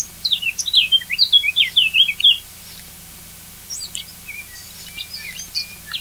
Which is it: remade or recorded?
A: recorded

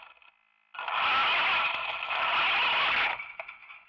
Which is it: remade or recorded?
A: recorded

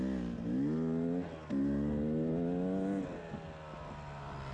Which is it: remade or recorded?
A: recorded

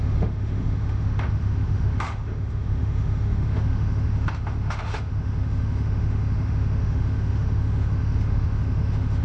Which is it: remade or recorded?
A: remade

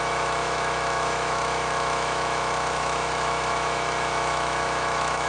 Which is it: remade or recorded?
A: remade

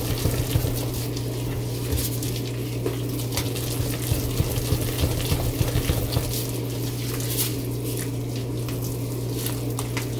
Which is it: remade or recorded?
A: recorded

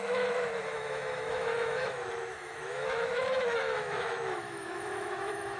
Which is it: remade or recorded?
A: remade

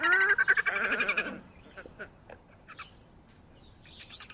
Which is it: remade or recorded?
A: recorded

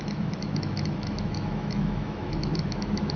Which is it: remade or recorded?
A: remade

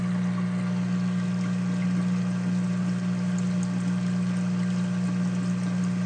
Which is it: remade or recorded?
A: recorded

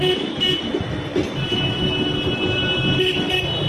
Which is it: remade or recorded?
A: recorded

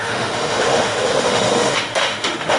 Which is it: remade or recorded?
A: remade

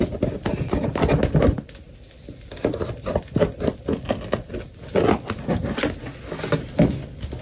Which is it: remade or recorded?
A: recorded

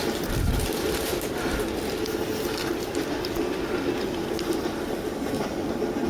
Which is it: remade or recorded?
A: recorded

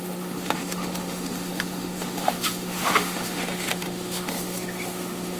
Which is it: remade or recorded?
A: remade